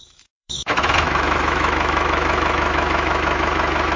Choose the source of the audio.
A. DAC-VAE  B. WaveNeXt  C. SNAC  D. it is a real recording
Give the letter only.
A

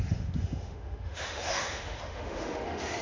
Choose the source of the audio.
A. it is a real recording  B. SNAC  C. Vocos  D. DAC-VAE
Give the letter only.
D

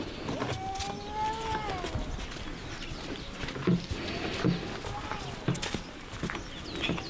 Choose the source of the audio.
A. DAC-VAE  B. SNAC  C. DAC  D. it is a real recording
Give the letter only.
D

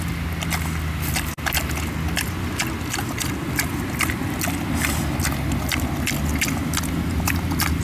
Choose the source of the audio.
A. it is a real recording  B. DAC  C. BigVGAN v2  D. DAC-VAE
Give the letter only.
A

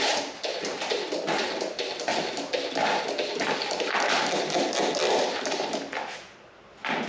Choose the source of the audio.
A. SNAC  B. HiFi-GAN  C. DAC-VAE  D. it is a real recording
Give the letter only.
D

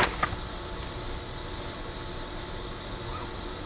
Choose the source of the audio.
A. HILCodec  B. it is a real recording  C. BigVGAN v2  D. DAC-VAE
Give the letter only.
B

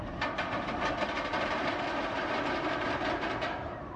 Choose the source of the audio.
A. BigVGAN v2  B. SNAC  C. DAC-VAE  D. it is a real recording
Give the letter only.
D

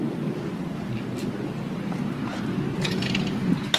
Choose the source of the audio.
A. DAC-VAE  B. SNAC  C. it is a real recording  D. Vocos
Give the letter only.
C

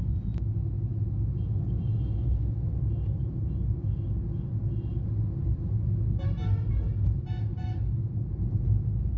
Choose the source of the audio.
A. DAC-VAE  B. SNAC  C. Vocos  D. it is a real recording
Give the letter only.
D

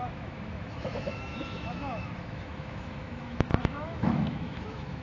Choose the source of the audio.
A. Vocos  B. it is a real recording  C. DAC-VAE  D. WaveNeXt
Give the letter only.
C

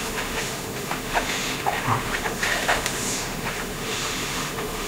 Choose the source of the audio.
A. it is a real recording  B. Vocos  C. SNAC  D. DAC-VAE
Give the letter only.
D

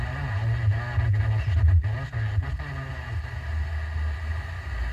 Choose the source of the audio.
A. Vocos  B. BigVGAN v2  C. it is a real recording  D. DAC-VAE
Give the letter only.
C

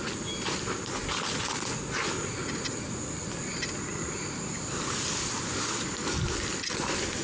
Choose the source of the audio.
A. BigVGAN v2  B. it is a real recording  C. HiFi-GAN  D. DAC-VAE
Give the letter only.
B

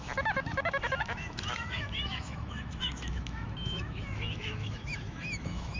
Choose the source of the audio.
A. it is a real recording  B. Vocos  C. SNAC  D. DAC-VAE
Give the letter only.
D